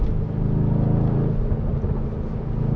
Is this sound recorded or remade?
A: recorded